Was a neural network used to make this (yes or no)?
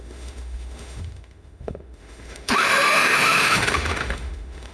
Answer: yes